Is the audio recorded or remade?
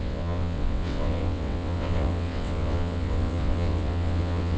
remade